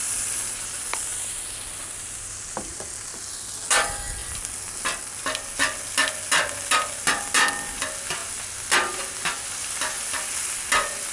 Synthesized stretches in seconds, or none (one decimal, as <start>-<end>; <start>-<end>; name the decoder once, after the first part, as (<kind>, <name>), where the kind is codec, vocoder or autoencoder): none